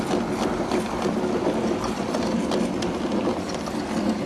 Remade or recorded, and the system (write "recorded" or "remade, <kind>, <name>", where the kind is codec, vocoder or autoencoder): recorded